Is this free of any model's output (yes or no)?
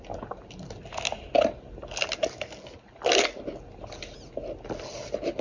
yes